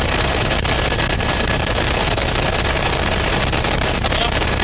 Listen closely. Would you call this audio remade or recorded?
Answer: remade